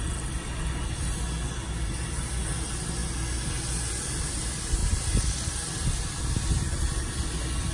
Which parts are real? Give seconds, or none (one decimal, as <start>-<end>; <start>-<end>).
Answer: 0.0-7.7